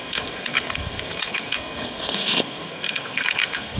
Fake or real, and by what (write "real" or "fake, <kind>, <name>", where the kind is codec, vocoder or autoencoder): fake, codec, SNAC